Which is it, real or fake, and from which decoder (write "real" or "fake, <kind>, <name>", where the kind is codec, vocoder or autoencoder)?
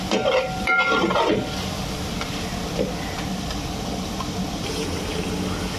real